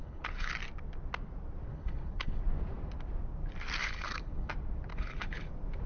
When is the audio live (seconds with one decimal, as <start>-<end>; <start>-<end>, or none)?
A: 0.5-1.7; 2.4-3.8; 4.5-4.9; 5.5-5.9